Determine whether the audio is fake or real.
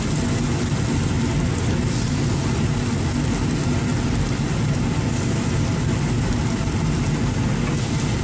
real